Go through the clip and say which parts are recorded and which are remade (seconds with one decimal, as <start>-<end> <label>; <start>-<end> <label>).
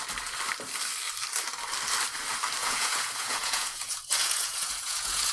0.0-2.6 recorded; 2.6-5.3 remade